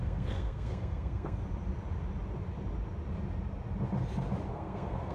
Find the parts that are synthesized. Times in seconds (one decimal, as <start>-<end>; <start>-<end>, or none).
0.0-1.4; 4.5-5.1